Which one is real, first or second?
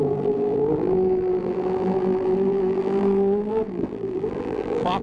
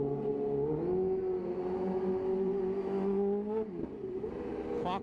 second